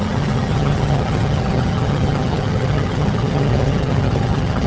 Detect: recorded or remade remade